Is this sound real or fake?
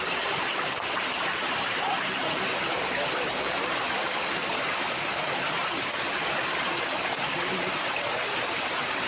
fake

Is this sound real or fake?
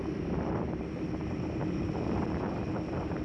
fake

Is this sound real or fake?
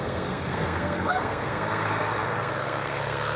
fake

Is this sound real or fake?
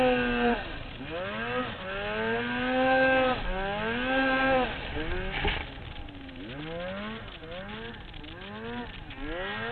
real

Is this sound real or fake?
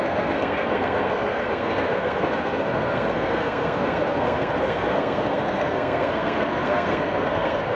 fake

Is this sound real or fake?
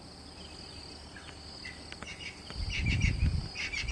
real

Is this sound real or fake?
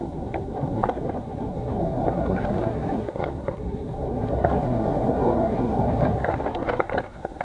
fake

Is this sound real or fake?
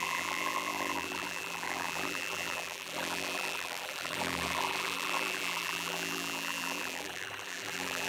fake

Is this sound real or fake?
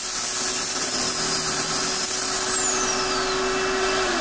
real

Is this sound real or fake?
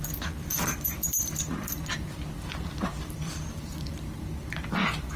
fake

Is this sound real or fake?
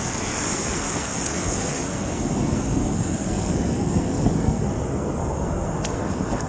fake